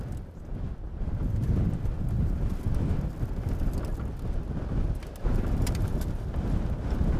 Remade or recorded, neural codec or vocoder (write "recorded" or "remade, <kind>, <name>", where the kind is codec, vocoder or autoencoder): recorded